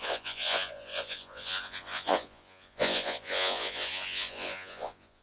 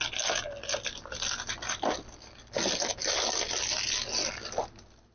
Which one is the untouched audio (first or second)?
second